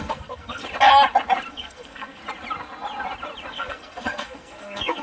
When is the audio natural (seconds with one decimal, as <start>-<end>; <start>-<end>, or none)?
0.6-1.5; 2.2-3.5